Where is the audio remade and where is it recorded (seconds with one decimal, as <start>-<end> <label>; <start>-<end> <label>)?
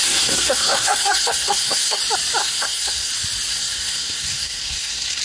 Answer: 0.0-2.0 remade; 2.0-2.4 recorded; 2.4-3.1 remade; 3.1-3.5 recorded; 3.5-5.2 remade